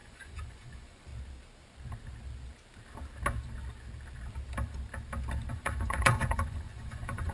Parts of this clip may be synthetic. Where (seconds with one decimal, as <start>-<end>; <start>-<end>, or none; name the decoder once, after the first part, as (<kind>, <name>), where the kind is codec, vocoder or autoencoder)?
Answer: 0.0-1.1 (vocoder, Vocos); 5.5-7.3